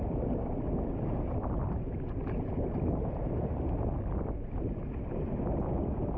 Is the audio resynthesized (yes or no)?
no